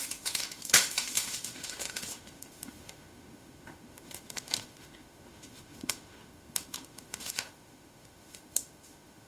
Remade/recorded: remade